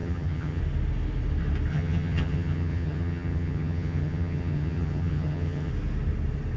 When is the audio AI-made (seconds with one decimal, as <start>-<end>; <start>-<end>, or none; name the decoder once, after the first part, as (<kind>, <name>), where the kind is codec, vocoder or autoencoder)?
0.0-0.6 (vocoder, HiFi-GAN); 1.7-5.7